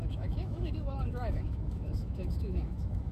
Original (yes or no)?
no